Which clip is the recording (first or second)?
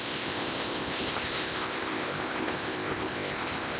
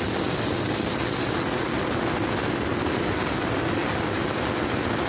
second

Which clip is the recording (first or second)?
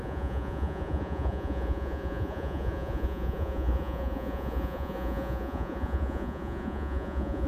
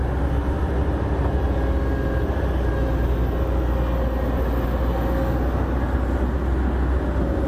second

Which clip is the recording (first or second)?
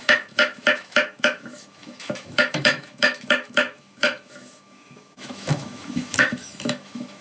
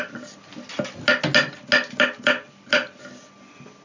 second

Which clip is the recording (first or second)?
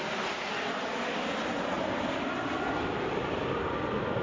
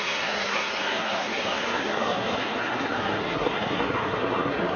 first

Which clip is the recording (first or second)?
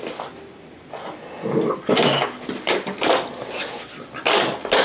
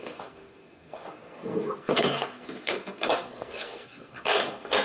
first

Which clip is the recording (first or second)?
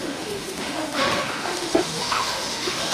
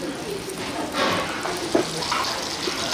second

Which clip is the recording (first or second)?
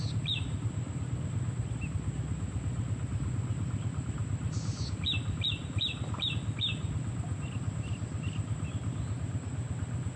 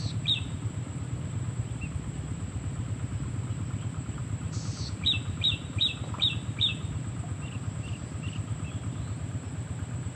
first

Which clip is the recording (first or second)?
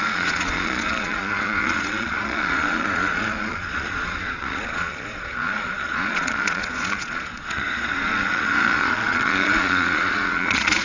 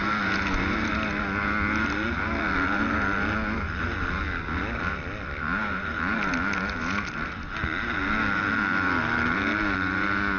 second